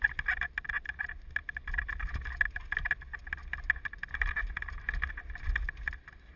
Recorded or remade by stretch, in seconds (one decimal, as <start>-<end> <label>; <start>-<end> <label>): 0.0-6.4 recorded